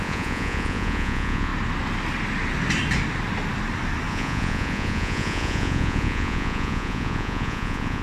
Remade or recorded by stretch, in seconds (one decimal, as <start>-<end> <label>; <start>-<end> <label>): 0.0-1.5 remade; 1.5-4.1 recorded; 4.1-8.0 remade